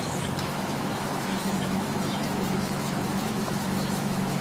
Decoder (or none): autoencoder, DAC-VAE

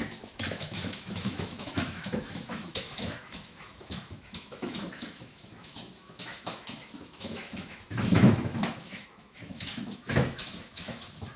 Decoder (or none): autoencoder, DAC-VAE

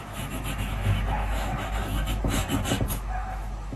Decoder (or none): autoencoder, DAC-VAE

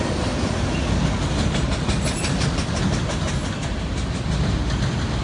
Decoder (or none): none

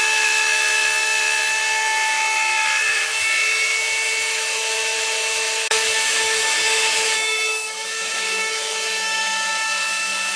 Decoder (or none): autoencoder, DAC-VAE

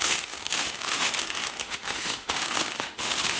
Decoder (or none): autoencoder, DAC-VAE